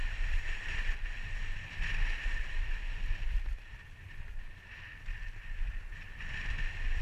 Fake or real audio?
fake